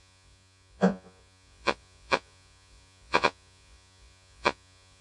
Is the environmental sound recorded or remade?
remade